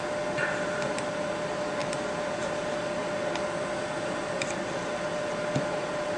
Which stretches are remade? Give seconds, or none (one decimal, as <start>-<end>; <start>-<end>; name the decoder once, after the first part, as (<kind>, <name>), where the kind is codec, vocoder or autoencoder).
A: none